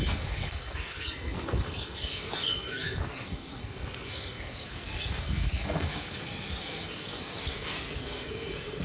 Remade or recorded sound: remade